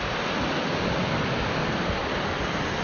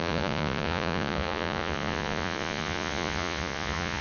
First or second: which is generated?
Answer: second